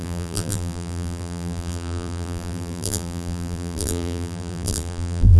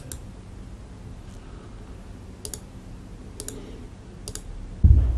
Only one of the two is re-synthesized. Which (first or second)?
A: first